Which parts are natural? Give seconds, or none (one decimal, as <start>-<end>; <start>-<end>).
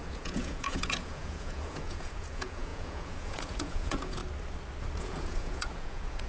4.2-5.0